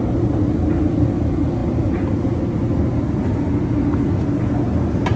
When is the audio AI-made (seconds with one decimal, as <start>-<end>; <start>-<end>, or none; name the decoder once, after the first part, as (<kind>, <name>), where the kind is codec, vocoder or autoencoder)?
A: none